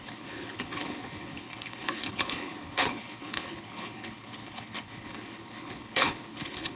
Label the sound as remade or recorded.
remade